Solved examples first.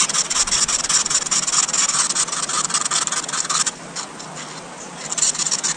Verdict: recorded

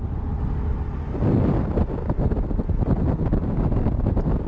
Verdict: recorded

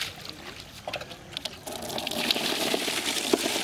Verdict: recorded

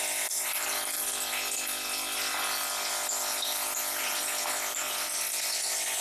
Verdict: recorded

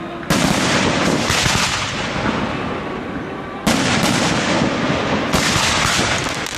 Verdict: recorded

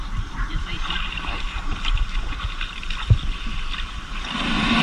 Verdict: remade